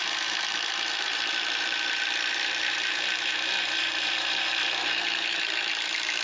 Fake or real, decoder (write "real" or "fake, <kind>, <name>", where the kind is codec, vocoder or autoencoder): fake, vocoder, BigVGAN v2